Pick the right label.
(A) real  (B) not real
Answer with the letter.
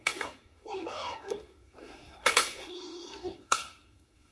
B